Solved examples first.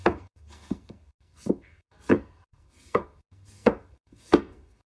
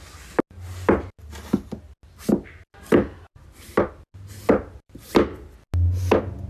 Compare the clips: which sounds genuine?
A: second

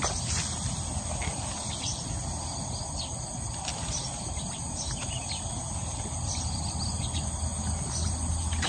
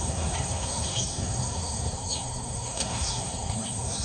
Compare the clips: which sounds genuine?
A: first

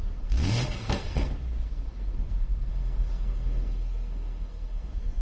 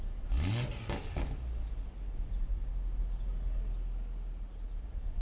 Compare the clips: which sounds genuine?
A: second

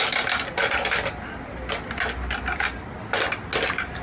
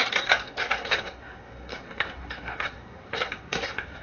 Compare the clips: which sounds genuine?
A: first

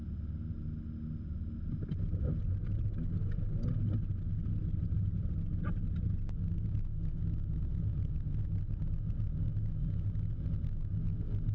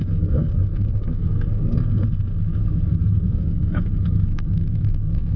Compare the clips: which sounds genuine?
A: first